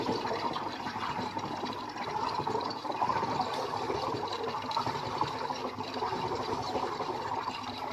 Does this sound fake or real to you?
real